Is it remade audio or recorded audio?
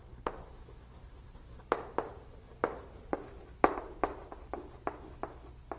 recorded